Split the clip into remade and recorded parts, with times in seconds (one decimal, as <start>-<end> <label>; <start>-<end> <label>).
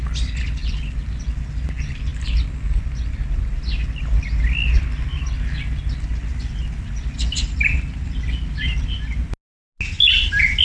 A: 0.0-10.6 recorded